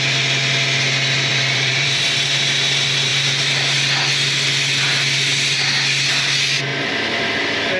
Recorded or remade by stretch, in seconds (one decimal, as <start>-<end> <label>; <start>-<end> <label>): 0.0-1.3 recorded; 1.3-2.0 remade; 2.0-7.8 recorded